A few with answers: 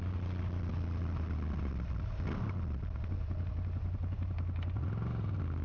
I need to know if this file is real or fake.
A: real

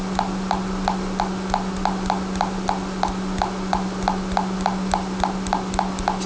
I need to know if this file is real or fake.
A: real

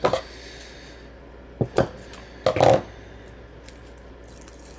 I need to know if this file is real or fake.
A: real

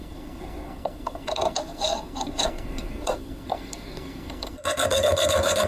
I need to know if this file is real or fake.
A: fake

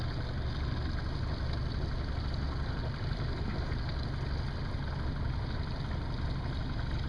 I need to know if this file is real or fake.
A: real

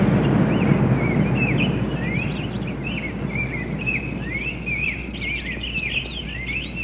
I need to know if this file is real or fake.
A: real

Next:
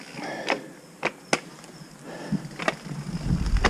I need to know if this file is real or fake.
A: real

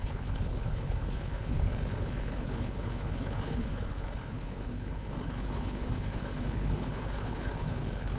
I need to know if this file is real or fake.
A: fake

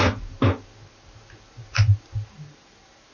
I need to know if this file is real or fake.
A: real